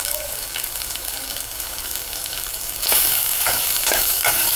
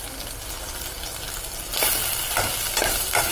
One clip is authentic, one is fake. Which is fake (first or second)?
first